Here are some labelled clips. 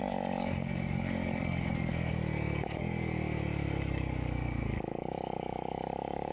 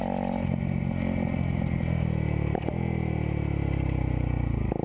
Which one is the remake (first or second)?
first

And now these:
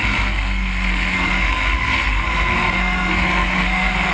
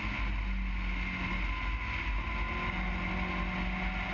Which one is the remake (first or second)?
first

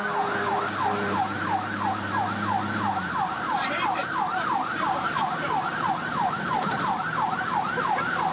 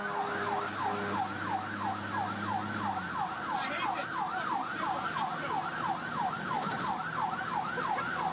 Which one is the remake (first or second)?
first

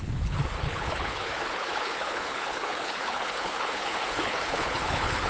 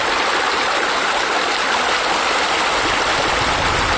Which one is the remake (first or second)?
first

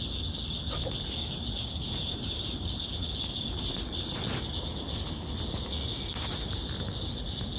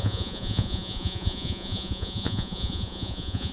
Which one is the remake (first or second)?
second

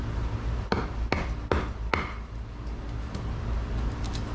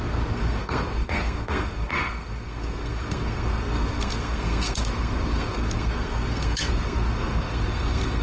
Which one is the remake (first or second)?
second